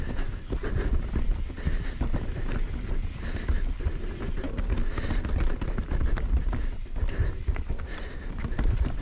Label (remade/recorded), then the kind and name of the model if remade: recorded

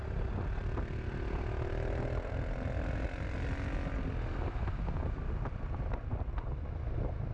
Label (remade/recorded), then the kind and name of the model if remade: recorded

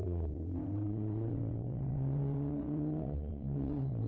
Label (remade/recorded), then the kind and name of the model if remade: remade, vocoder, WaveNeXt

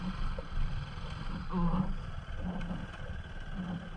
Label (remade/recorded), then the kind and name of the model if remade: recorded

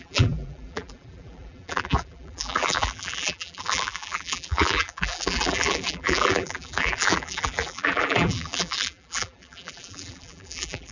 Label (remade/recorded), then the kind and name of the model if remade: remade, vocoder, BigVGAN v2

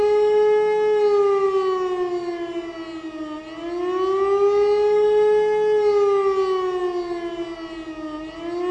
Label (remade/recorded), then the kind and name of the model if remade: recorded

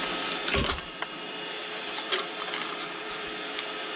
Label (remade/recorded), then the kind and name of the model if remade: remade, vocoder, BigVGAN v2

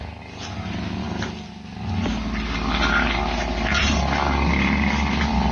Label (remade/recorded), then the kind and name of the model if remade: recorded